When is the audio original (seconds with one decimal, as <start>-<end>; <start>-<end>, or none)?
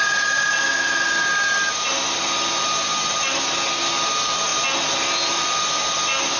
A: 0.0-6.4